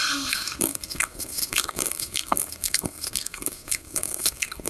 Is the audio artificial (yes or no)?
yes